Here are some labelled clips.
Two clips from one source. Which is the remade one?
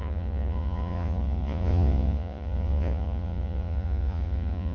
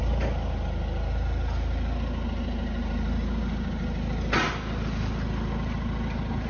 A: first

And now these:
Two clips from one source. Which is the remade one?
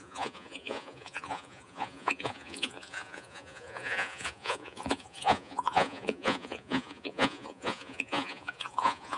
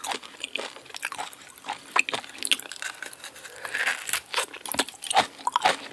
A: first